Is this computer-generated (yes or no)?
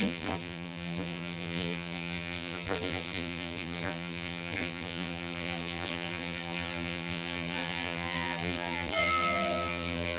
yes